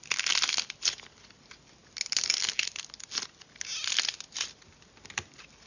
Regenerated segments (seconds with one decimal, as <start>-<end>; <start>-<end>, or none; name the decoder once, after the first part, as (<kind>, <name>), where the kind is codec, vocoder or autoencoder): none